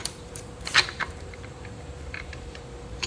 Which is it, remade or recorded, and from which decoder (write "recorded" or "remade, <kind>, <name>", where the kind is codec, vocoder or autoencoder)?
remade, vocoder, BigVGAN v2